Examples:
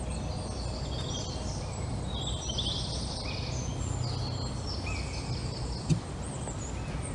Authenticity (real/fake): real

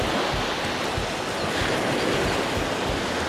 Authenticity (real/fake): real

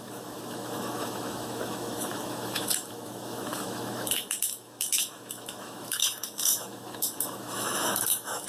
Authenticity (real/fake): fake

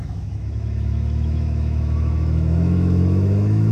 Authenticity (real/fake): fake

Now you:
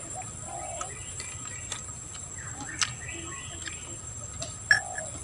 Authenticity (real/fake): real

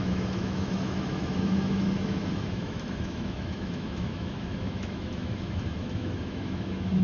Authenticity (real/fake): fake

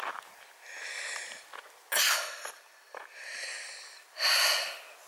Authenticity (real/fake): real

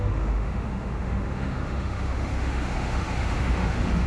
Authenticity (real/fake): fake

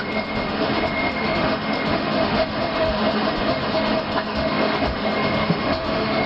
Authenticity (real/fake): fake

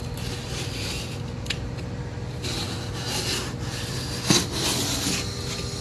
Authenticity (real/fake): real